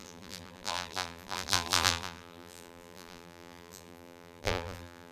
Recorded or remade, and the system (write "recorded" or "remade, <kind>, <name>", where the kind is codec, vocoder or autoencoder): remade, vocoder, BigVGAN v2